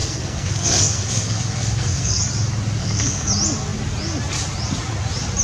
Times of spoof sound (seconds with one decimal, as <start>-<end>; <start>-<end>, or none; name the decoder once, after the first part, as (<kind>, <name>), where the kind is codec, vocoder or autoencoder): 0.0-2.2 (codec, SNAC); 2.8-3.3